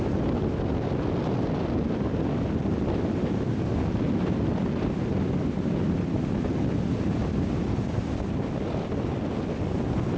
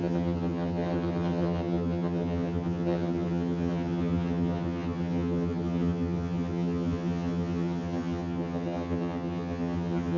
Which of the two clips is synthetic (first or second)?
second